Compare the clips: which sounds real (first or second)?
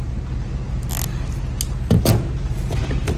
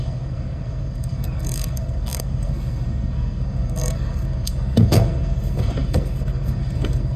first